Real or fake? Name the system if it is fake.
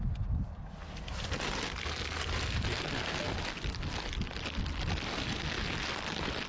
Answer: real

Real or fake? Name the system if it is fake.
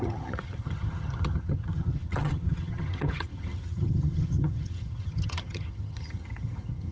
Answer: fake, vocoder, HiFi-GAN